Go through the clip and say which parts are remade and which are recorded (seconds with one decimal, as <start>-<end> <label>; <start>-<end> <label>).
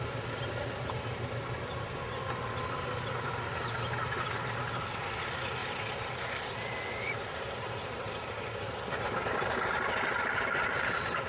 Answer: 0.0-5.6 recorded; 5.6-9.2 remade; 9.2-11.3 recorded